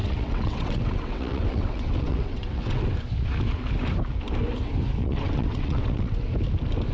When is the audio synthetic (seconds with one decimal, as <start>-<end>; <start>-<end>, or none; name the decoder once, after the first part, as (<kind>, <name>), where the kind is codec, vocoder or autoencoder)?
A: 0.0-2.8 (vocoder, WaveNeXt); 5.0-6.3